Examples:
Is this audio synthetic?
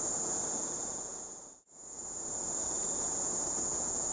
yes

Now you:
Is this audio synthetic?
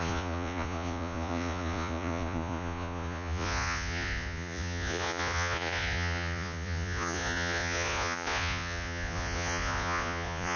yes